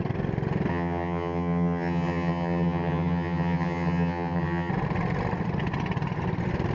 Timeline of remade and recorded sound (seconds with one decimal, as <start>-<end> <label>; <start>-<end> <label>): 0.0-0.7 recorded; 0.7-4.7 remade; 4.7-6.7 recorded